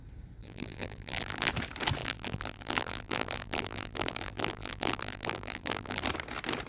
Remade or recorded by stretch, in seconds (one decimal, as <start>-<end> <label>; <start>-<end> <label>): 0.0-0.4 recorded; 0.4-1.5 remade; 1.5-2.0 recorded; 2.0-6.0 remade; 6.0-6.7 recorded